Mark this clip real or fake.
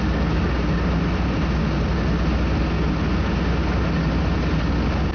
real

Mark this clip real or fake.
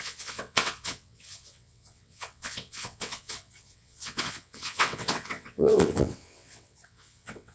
fake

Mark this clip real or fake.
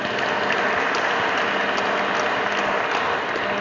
real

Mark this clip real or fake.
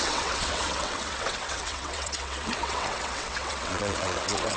fake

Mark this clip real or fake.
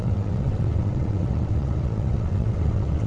fake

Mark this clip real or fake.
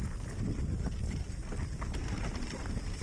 real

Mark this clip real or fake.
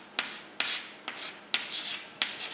real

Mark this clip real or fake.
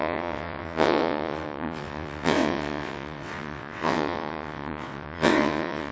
fake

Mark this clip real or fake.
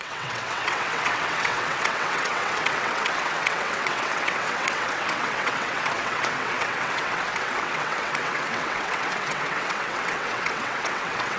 fake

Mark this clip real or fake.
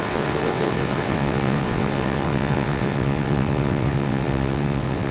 fake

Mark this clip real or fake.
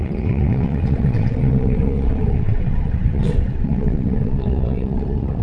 fake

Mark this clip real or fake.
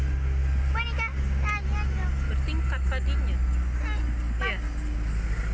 real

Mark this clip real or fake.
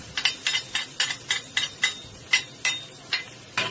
real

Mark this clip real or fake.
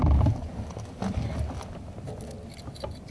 real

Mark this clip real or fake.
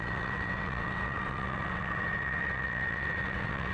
fake